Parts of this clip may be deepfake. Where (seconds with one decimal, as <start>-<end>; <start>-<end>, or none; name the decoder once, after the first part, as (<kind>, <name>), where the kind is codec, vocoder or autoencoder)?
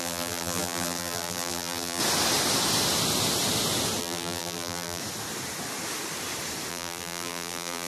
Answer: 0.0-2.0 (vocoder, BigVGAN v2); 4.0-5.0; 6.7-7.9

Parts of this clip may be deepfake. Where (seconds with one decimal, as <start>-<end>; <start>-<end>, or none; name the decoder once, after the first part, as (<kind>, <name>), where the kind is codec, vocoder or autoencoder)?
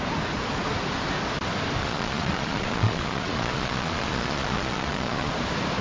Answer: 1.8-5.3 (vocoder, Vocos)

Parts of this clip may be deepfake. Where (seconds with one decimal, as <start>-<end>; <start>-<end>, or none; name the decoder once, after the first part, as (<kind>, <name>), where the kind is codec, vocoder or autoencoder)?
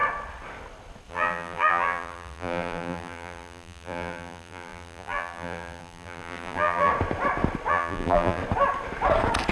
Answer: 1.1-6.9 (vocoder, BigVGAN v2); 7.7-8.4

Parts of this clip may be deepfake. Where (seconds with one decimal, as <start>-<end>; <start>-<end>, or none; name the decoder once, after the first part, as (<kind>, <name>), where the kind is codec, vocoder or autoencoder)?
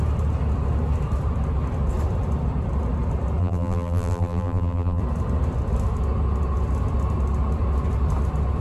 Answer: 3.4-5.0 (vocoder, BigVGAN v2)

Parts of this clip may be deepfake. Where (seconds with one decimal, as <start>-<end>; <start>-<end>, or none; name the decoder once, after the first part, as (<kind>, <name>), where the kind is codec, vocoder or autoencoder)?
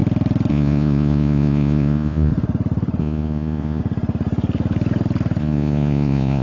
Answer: 0.5-2.3 (vocoder, Vocos); 3.0-3.8; 5.4-6.4